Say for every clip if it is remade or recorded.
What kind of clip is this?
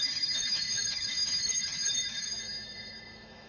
remade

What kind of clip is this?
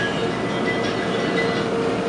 recorded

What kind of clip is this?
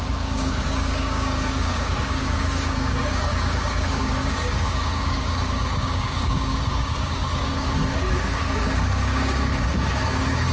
remade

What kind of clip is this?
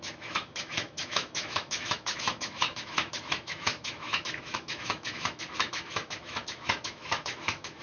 remade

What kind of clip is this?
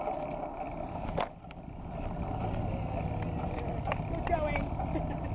recorded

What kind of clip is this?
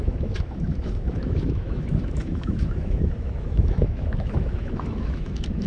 remade